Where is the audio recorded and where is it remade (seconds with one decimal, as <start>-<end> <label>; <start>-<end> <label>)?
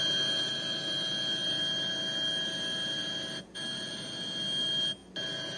0.0-5.6 recorded